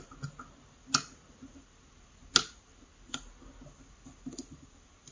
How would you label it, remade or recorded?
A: recorded